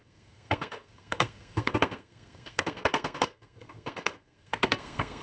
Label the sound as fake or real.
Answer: fake